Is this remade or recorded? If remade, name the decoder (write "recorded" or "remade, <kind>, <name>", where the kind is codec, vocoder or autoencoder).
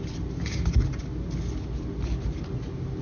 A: recorded